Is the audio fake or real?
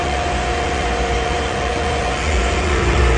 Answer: fake